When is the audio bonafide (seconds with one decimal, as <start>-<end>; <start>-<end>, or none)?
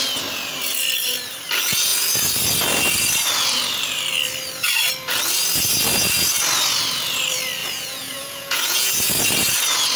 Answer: 0.0-7.6; 8.9-10.0